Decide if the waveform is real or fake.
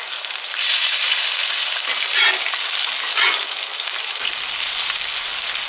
real